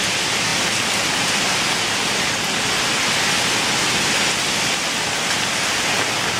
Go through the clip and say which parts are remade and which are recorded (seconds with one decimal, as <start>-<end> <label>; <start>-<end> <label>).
0.0-6.4 recorded